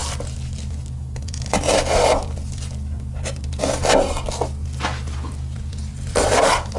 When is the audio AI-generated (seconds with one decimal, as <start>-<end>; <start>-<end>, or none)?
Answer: 5.8-6.8